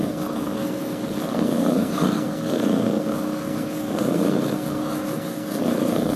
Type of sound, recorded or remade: remade